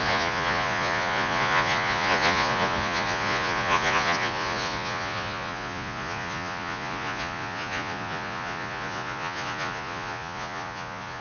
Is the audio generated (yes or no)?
yes